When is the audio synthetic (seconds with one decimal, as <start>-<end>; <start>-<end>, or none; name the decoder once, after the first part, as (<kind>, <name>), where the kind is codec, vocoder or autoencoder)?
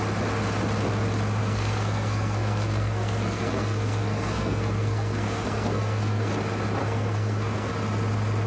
1.4-6.3 (codec, SNAC); 6.8-7.7